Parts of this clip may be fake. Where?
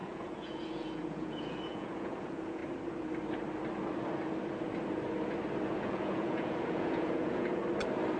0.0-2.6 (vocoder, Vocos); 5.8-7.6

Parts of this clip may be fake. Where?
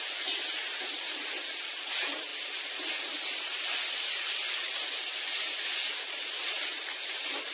0.0-2.3 (vocoder, BigVGAN v2); 6.8-7.5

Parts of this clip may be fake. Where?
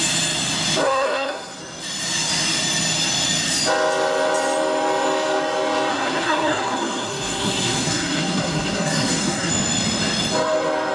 0.8-1.6 (codec, SNAC); 5.9-9.5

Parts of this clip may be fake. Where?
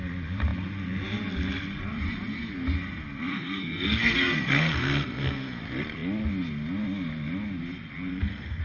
3.3-5.6 (codec, SNAC); 8.1-8.6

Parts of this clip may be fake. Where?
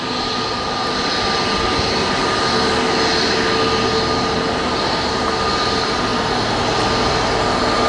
none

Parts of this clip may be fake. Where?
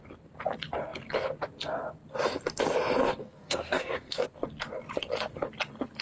3.2-4.2 (codec, SNAC)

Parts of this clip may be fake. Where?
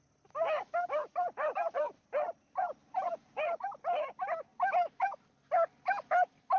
1.1-3.7 (vocoder, BigVGAN v2)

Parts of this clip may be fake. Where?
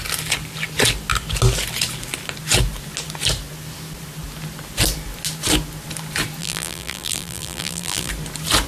6.4-8.1 (vocoder, BigVGAN v2)